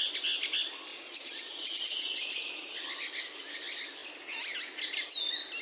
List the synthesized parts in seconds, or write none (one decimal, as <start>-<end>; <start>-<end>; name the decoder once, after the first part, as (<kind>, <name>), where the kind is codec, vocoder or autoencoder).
0.9-2.4 (vocoder, Vocos)